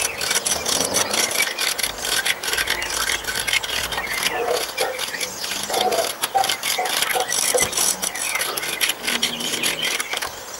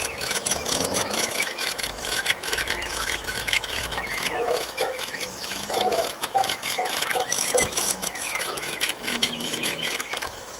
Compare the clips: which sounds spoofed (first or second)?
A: second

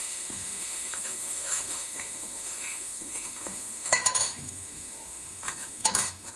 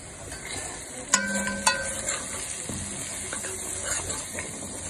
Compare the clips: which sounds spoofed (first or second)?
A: first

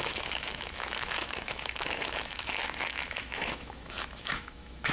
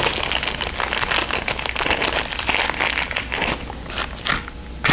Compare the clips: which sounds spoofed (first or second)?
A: first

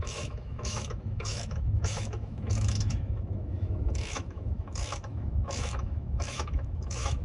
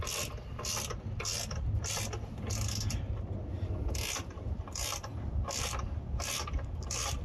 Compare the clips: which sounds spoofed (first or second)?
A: first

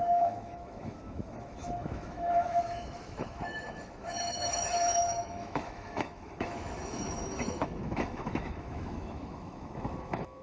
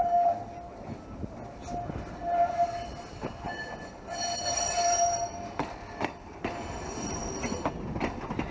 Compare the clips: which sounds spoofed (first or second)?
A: first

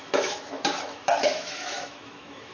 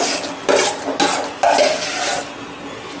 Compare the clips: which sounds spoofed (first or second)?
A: first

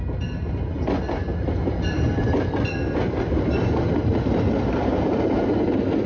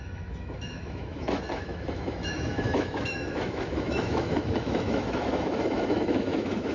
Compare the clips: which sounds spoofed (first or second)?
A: second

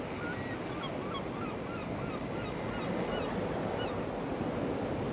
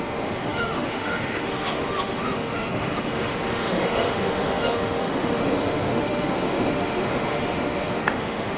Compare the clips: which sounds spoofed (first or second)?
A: second